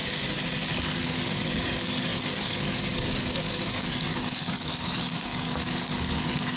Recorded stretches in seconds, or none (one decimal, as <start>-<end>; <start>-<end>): 0.0-0.7